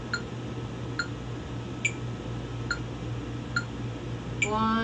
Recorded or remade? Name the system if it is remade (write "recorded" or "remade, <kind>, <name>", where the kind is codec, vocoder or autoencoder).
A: recorded